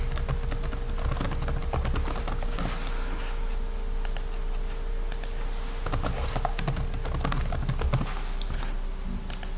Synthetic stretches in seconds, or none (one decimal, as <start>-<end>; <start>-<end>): none

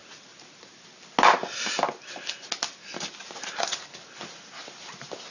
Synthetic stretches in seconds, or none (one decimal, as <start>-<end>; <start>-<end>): none

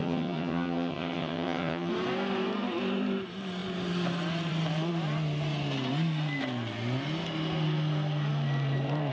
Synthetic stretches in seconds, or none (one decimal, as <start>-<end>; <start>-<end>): 0.0-1.9